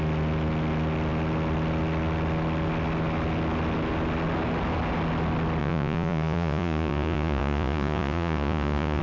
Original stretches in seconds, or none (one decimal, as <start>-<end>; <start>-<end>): 0.0-5.6